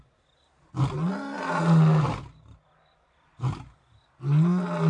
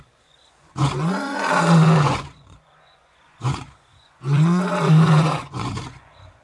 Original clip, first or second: first